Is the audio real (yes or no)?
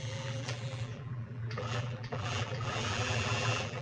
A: no